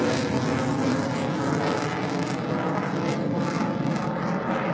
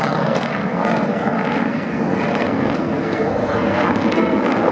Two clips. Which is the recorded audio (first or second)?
first